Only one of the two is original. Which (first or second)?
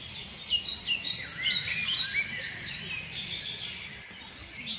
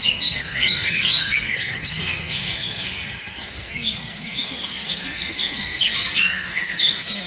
first